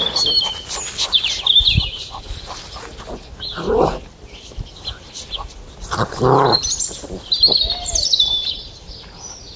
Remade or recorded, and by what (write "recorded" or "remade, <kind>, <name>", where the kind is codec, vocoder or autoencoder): recorded